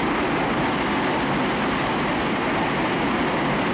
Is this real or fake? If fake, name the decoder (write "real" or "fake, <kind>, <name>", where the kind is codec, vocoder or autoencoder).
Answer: real